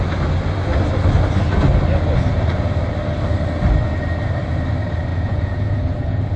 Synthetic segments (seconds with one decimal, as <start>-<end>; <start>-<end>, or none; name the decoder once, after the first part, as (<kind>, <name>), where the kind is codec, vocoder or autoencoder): 5.1-6.4 (vocoder, Vocos)